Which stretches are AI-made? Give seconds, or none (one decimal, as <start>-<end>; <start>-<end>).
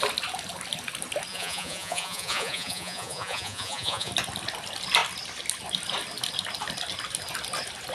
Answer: 1.3-4.1